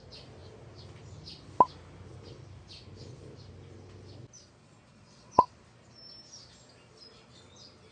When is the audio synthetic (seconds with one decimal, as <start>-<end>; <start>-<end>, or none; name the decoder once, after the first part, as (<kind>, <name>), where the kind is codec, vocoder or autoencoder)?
4.6-5.5 (vocoder, Vocos)